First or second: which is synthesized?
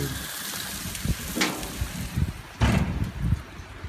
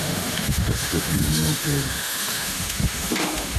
second